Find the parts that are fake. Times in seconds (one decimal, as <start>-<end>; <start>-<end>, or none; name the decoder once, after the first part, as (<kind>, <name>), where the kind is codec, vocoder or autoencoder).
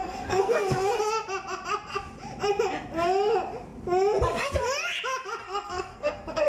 0.0-1.0 (codec, SNAC); 5.4-6.5